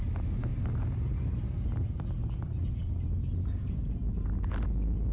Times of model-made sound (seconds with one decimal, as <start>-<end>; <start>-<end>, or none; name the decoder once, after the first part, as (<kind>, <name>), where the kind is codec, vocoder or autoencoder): none